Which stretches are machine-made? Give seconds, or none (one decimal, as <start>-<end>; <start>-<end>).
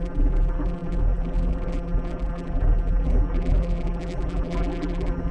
0.0-5.3